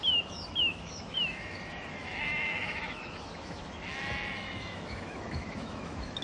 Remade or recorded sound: remade